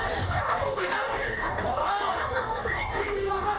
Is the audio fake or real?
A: fake